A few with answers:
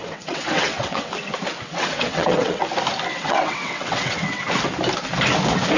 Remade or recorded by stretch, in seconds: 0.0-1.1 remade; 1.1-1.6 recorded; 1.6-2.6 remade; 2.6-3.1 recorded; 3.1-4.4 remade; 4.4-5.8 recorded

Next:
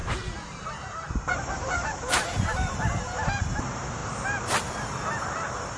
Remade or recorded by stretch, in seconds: 0.0-5.8 remade

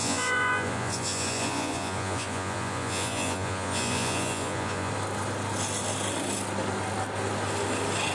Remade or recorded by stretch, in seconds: 0.0-4.9 remade; 4.9-8.1 recorded

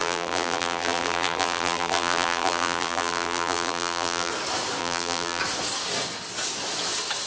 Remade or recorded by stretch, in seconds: 0.0-4.3 remade; 4.3-4.8 recorded; 4.8-5.4 remade; 5.4-7.3 recorded

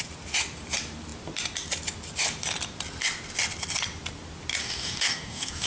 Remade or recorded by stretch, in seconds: 0.0-4.6 recorded; 4.6-5.7 remade